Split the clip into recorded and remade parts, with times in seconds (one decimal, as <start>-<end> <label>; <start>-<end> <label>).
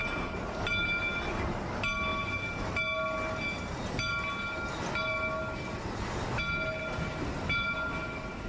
0.0-8.5 recorded